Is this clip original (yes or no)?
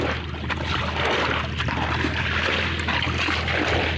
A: no